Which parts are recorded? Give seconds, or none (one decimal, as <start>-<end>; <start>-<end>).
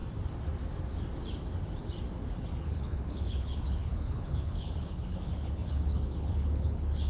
0.0-2.5